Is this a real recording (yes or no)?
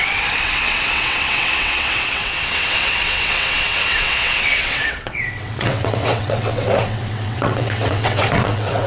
no